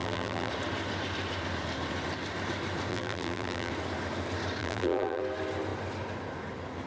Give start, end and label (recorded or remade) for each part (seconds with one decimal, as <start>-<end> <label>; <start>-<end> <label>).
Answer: 0.0-0.5 remade; 0.5-2.9 recorded; 2.9-3.7 remade; 3.7-4.6 recorded; 4.6-5.2 remade; 5.2-6.9 recorded